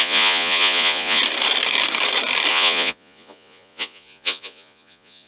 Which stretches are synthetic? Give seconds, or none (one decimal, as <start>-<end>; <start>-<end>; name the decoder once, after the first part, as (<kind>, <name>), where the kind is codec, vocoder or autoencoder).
0.0-1.2 (vocoder, Vocos); 2.5-5.3